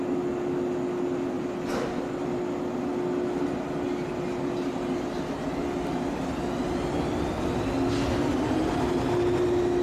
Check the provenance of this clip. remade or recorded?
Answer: recorded